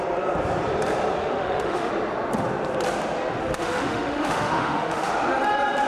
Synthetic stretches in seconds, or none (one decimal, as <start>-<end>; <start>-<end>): 1.2-1.9; 3.4-5.1